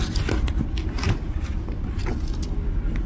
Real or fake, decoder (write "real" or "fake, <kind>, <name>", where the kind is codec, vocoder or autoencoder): real